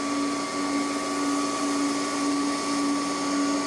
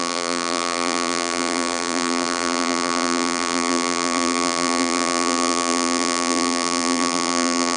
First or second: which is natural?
first